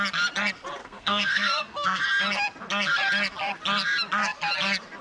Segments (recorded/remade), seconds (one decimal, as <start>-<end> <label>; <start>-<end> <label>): 0.0-0.8 recorded; 0.8-2.0 remade; 2.0-5.0 recorded